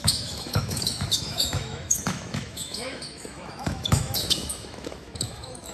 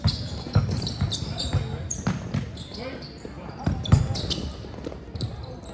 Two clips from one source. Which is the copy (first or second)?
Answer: first